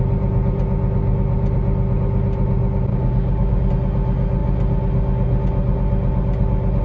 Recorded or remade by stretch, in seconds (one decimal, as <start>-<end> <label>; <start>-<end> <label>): 0.0-2.9 recorded; 2.9-3.7 remade; 3.7-6.8 recorded